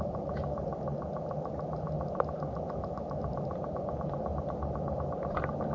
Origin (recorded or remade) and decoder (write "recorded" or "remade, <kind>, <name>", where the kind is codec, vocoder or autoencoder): recorded